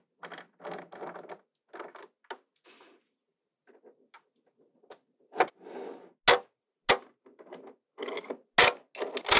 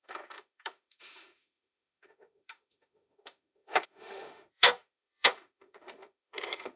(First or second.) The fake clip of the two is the second